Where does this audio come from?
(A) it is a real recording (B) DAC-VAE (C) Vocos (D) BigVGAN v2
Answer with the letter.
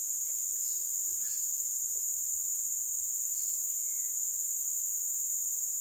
A